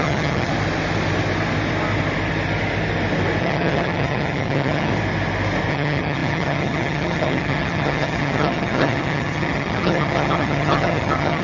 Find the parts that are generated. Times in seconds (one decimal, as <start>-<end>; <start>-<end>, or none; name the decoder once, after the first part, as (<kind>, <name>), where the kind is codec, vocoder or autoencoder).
0.0-0.5 (vocoder, HiFi-GAN); 3.4-4.9; 5.7-11.4